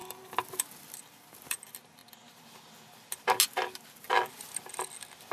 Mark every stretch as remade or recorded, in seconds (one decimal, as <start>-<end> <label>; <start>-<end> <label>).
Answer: 0.0-2.0 remade; 2.0-4.7 recorded; 4.7-5.3 remade